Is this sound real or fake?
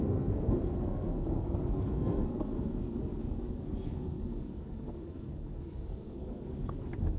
fake